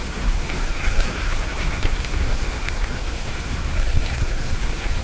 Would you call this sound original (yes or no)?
no